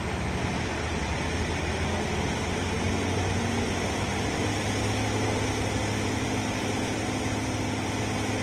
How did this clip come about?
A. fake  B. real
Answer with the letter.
B